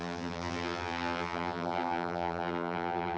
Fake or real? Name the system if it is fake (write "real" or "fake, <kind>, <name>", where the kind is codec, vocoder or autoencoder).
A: fake, vocoder, BigVGAN v2